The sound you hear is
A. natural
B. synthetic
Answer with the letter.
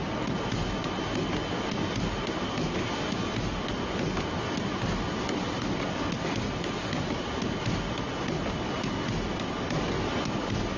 A